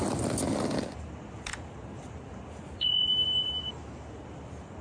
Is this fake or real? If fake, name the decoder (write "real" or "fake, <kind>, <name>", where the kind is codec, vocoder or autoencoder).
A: real